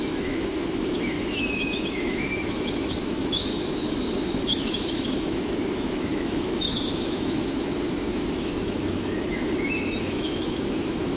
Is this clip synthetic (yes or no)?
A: yes